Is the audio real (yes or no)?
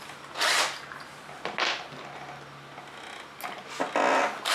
yes